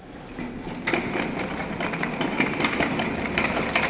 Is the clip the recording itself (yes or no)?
yes